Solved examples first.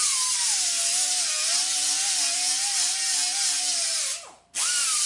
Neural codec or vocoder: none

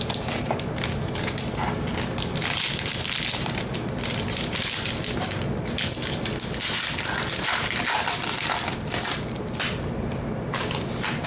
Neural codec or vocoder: none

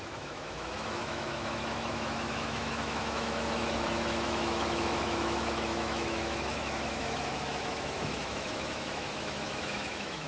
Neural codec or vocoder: autoencoder, DAC-VAE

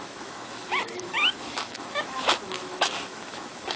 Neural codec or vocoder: autoencoder, DAC-VAE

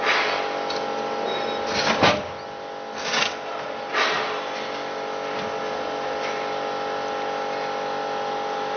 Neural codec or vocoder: none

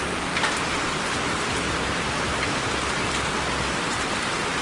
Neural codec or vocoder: none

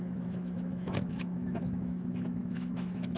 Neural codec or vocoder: autoencoder, DAC-VAE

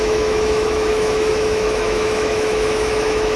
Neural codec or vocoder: autoencoder, DAC-VAE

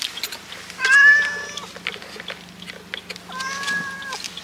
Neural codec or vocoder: none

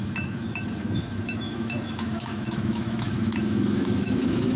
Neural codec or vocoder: autoencoder, DAC-VAE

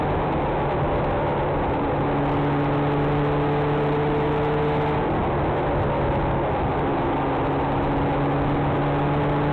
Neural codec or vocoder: none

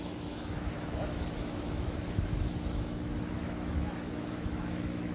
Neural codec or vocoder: autoencoder, DAC-VAE